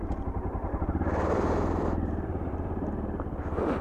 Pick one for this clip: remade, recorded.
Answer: remade